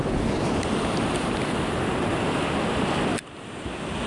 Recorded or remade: recorded